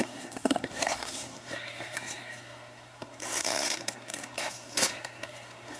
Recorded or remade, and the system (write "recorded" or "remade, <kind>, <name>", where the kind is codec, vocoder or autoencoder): remade, codec, SNAC